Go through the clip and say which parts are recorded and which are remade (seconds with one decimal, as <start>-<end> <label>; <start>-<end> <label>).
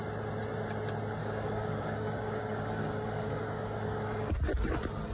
0.0-1.2 recorded; 1.2-4.3 remade; 4.3-5.1 recorded